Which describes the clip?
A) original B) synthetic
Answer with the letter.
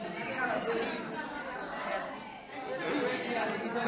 A